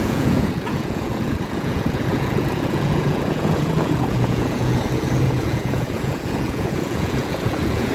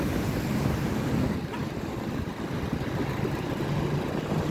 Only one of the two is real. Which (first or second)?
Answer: second